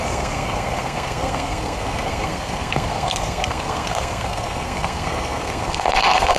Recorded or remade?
remade